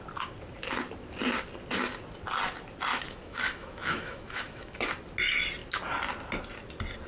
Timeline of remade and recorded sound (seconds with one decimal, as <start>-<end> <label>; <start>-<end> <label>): 0.0-2.9 recorded; 2.9-4.9 remade; 4.9-7.1 recorded